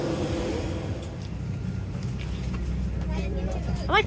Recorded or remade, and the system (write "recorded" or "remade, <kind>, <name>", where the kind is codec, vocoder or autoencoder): recorded